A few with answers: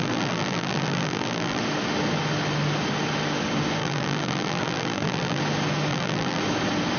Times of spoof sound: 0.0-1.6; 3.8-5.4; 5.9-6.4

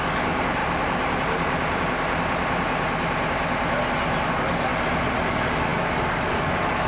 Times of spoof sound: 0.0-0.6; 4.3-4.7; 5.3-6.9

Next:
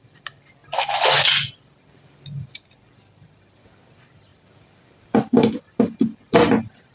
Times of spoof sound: none

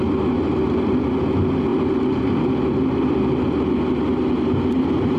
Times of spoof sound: none

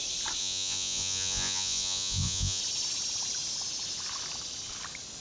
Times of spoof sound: 0.4-2.6

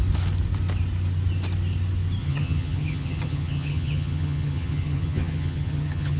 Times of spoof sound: 2.2-6.2

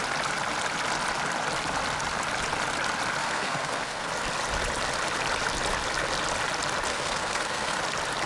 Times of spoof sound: 3.2-4.1; 6.9-7.8